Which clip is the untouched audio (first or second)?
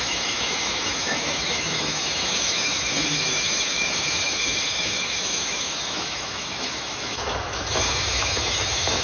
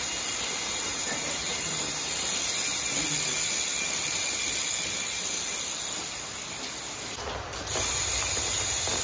second